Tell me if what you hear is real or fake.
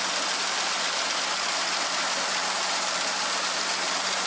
real